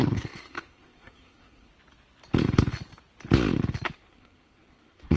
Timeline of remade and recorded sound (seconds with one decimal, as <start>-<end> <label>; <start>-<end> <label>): 0.0-1.7 remade; 1.7-3.9 recorded; 3.9-5.2 remade